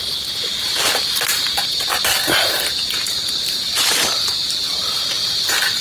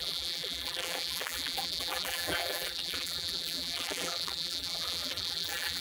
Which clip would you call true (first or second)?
first